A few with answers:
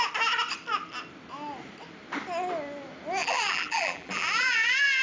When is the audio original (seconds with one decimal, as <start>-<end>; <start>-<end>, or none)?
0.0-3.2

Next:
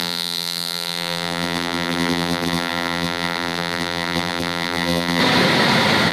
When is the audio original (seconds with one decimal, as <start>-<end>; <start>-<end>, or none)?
5.2-6.1

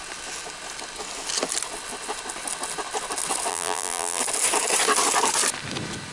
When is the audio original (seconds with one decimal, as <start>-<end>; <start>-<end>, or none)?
0.0-3.5; 4.2-6.1

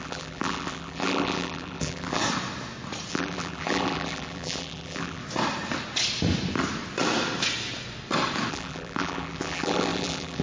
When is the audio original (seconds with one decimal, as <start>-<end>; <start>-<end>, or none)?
2.2-3.1; 5.2-8.5